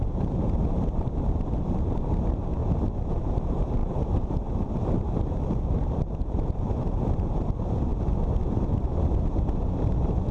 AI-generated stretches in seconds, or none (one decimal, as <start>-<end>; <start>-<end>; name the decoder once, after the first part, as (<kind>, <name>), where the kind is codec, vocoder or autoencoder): 0.0-2.6 (vocoder, BigVGAN v2); 3.1-7.9; 9.7-10.3